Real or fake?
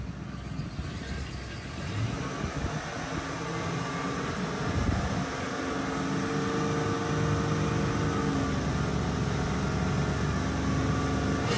real